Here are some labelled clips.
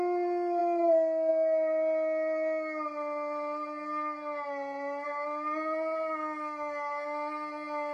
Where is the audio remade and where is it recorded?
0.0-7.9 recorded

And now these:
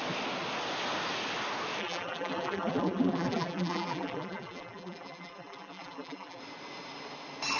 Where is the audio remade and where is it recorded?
0.0-1.8 recorded; 1.8-6.4 remade; 6.4-7.6 recorded

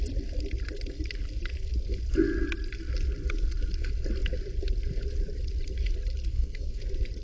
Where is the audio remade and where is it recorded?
0.0-6.3 recorded; 6.3-6.8 remade; 6.8-7.2 recorded

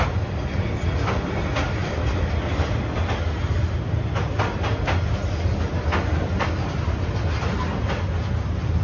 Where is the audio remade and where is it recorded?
0.0-8.8 recorded

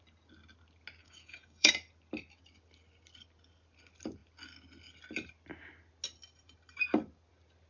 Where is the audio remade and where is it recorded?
0.0-1.0 recorded; 1.0-1.7 remade; 1.7-7.7 recorded